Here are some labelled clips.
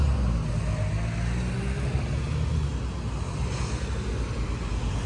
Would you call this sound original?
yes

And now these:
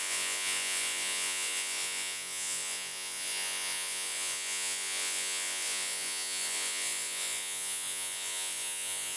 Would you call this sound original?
no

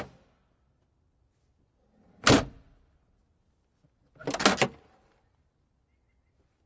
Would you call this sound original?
yes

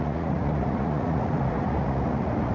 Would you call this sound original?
no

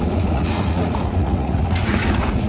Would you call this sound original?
no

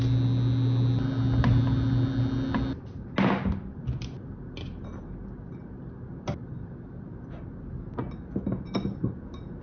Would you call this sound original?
yes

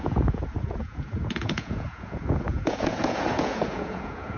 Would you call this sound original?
no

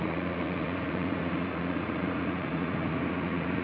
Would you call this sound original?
no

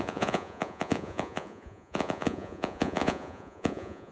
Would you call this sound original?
no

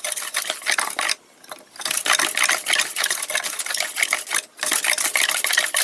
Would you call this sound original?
yes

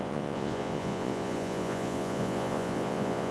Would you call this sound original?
no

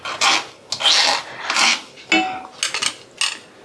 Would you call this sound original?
yes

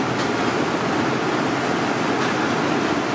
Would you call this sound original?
yes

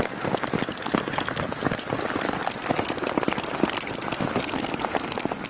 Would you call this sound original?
yes